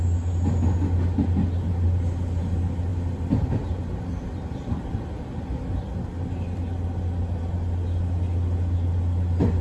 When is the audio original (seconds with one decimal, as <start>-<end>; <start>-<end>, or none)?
0.0-9.6